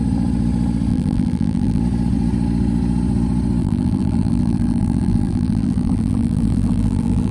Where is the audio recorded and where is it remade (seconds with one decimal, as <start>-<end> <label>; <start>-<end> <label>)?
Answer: 0.0-0.9 recorded; 0.9-1.8 remade; 1.8-3.6 recorded; 3.6-7.3 remade